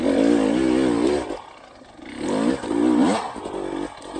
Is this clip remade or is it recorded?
recorded